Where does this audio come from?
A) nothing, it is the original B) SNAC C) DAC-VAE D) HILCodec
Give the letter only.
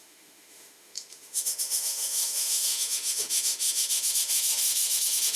C